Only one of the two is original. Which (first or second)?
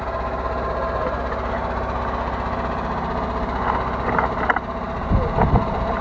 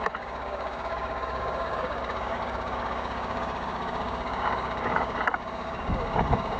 first